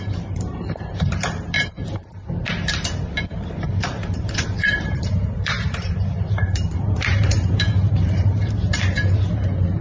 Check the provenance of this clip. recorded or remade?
remade